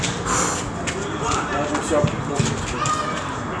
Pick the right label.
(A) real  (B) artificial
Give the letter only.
A